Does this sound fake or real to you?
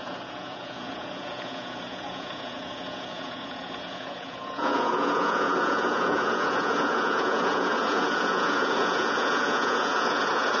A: fake